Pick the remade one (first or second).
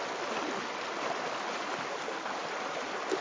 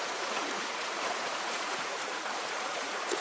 second